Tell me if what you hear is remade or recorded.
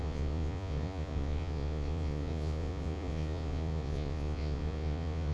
remade